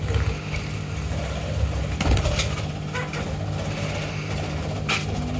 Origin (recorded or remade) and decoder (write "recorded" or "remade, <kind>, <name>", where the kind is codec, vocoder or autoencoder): recorded